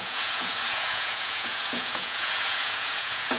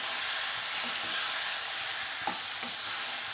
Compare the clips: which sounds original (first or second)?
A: second